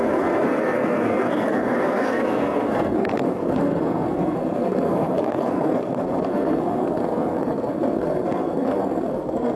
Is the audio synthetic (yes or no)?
yes